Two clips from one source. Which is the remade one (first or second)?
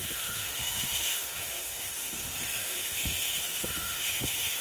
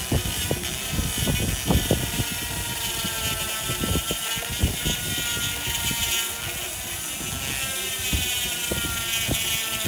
first